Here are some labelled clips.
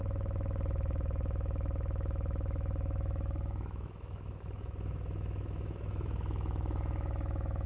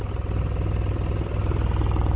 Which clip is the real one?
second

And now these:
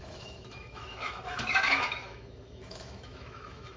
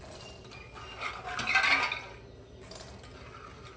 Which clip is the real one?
second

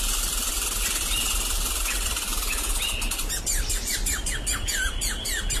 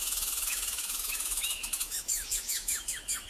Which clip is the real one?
first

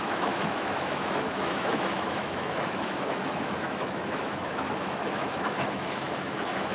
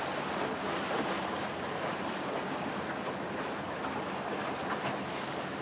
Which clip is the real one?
second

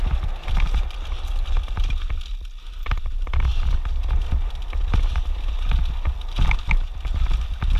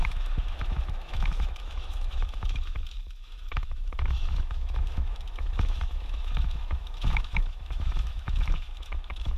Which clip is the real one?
first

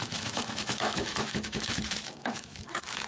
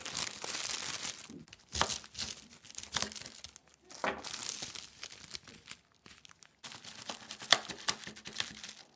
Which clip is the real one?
second